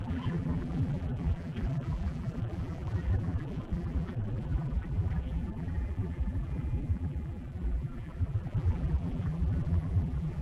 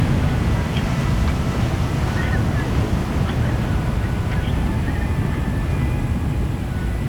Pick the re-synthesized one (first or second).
first